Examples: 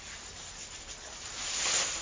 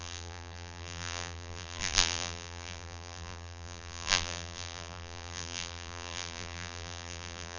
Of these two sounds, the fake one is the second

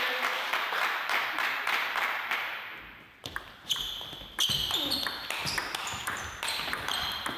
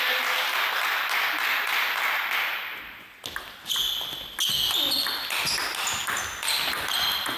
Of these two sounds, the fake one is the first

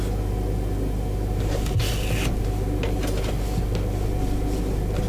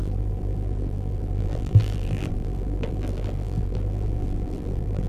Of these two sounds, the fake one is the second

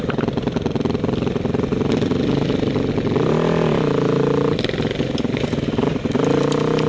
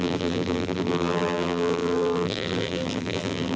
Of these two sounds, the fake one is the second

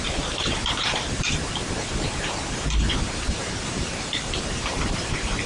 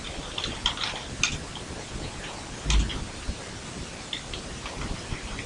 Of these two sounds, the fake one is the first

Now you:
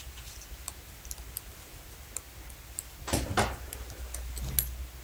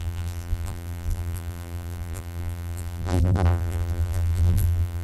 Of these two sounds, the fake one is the second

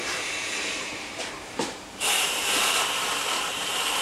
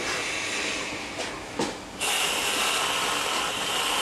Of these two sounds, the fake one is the first